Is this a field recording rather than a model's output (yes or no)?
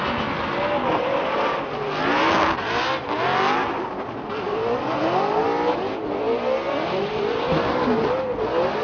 yes